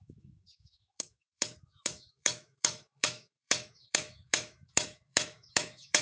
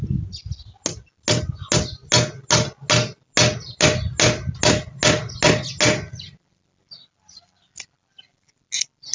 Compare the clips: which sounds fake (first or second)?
first